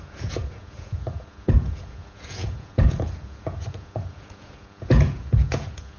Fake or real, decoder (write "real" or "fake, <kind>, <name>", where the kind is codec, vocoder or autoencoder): fake, vocoder, Vocos